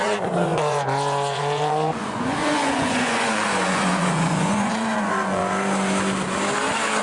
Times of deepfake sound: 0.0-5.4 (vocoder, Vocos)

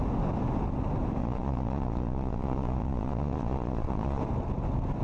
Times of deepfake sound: 1.2-4.2 (vocoder, Vocos)